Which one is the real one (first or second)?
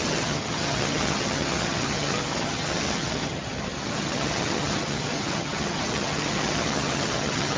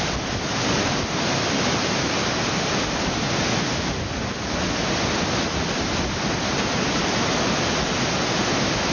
second